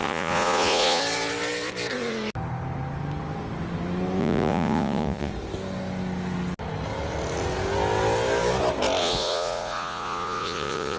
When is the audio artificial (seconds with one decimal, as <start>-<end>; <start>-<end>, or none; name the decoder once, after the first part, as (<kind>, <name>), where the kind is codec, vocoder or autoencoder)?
0.0-1.0 (vocoder, Vocos); 4.2-5.3; 9.0-11.0